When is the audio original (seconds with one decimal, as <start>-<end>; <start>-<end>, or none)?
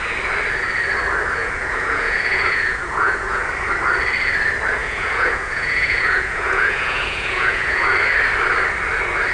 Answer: 0.0-1.4; 3.4-4.8; 7.9-9.3